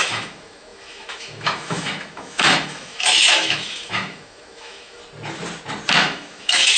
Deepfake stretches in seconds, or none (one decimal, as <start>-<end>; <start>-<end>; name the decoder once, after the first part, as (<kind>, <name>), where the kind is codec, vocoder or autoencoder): 0.0-5.0 (autoencoder, DAC-VAE); 6.0-6.8